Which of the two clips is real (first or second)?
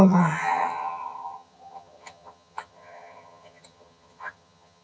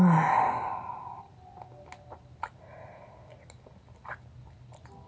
second